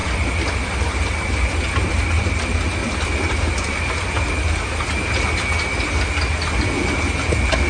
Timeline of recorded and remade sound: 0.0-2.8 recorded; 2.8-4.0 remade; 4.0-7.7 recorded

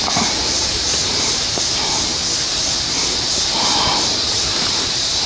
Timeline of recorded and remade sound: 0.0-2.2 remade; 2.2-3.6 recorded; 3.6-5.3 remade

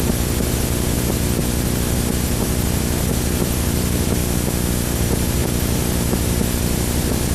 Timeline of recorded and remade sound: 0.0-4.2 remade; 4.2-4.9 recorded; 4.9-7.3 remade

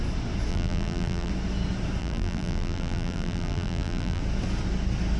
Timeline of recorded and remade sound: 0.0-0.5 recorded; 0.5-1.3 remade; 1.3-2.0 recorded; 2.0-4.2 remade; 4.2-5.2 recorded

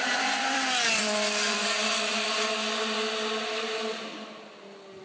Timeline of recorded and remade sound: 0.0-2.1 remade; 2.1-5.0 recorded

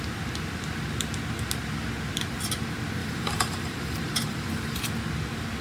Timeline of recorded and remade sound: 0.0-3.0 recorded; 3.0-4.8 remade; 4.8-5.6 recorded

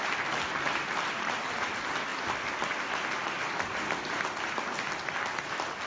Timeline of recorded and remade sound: 0.0-5.9 recorded

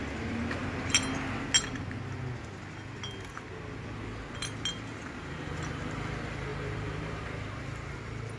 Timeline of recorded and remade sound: 0.0-8.4 recorded